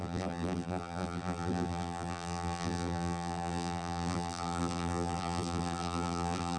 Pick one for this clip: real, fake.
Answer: fake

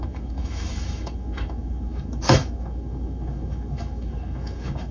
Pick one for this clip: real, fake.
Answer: fake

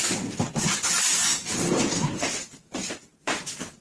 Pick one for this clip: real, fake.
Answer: fake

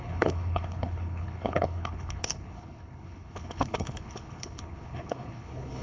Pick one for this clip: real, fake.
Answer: fake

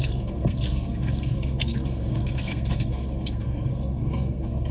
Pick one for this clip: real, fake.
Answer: fake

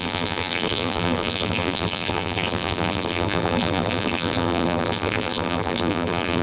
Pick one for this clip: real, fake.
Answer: fake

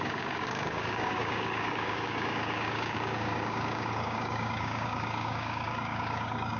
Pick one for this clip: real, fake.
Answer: fake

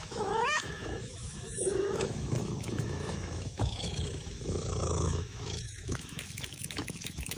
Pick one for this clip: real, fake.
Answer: fake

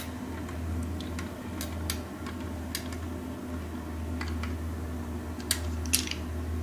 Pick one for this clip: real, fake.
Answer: real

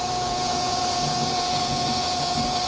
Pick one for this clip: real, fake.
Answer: fake